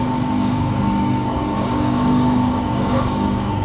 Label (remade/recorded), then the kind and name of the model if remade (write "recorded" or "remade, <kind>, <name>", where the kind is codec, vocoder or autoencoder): remade, codec, DAC